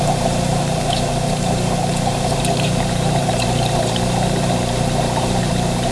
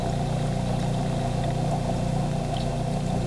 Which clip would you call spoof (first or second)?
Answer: first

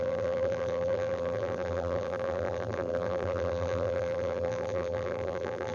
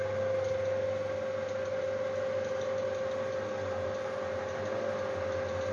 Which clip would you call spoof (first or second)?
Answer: first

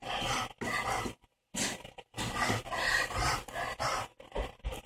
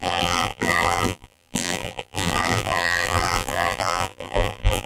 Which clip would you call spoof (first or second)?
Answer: second